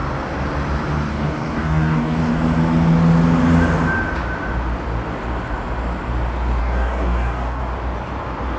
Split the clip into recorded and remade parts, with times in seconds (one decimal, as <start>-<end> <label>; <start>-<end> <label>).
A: 0.0-1.1 recorded; 1.1-2.3 remade; 2.3-6.6 recorded; 6.6-7.6 remade; 7.6-8.6 recorded

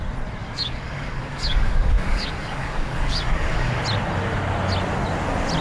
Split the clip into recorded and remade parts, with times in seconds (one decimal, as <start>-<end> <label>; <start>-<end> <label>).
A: 0.0-0.4 recorded; 0.4-3.8 remade; 3.8-5.6 recorded

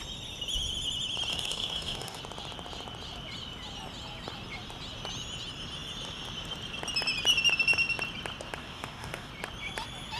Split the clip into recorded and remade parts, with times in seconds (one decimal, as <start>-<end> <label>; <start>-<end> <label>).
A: 0.0-1.3 recorded; 1.3-2.2 remade; 2.2-8.6 recorded; 8.6-9.3 remade; 9.3-10.2 recorded

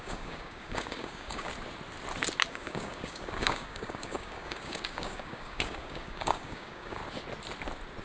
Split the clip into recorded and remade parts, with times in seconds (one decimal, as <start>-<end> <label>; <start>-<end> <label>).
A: 0.0-1.5 remade; 1.5-2.5 recorded; 2.5-7.0 remade; 7.0-8.0 recorded

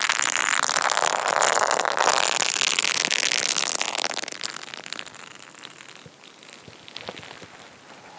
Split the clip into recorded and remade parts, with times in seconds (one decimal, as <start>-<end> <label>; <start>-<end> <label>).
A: 0.0-8.2 recorded

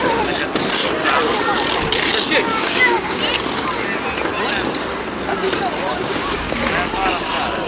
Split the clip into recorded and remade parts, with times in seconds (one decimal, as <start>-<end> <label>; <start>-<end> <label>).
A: 0.0-2.5 recorded; 2.5-3.2 remade; 3.2-5.9 recorded; 5.9-6.6 remade; 6.6-7.7 recorded